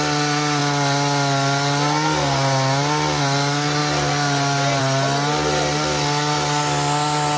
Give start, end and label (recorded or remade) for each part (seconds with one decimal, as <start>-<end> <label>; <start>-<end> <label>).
0.0-7.4 recorded